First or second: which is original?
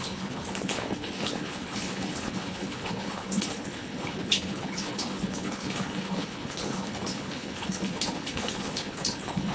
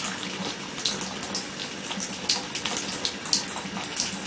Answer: second